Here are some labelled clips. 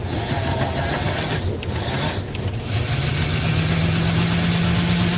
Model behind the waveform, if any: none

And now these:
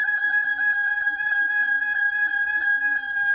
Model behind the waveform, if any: none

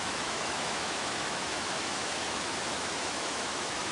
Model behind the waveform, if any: autoencoder, DAC-VAE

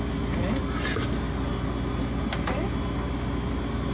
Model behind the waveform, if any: none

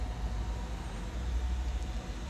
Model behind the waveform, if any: none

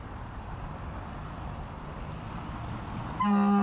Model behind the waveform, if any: none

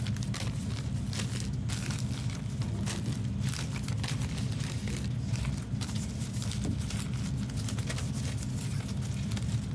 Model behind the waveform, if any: none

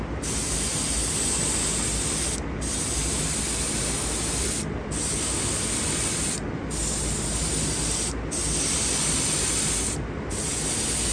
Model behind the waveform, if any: none